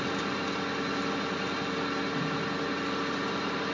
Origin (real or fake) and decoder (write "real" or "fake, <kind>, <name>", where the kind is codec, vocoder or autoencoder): real